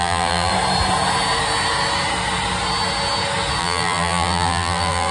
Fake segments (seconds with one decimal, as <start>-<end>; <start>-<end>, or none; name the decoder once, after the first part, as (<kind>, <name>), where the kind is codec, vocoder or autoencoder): 0.0-0.5 (vocoder, BigVGAN v2); 3.6-5.1

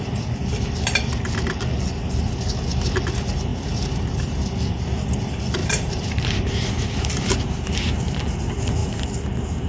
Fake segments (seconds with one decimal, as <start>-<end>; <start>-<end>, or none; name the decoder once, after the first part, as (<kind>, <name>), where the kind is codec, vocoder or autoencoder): 3.5-4.4 (vocoder, BigVGAN v2); 5.6-7.7

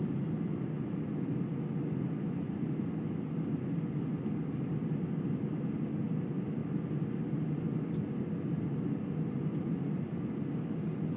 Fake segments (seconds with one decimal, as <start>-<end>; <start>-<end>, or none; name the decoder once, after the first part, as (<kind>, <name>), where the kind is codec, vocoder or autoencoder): none

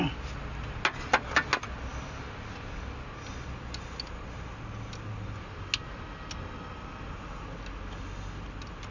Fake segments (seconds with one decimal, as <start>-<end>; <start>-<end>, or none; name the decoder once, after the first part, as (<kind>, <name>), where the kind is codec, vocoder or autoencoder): none